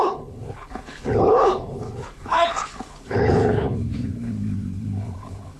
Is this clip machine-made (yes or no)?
yes